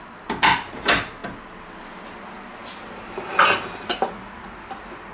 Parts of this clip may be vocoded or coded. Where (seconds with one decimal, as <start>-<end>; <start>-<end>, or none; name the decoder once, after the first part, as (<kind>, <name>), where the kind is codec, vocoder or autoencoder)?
none